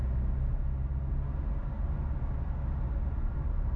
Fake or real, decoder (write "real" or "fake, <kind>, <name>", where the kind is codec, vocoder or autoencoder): real